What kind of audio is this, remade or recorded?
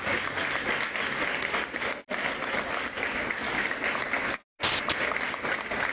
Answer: recorded